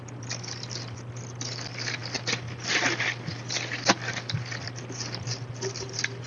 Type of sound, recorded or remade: remade